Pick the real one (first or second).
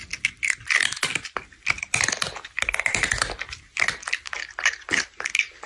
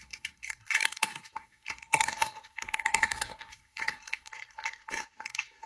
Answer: first